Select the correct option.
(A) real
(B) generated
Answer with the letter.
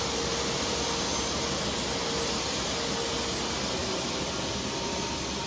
A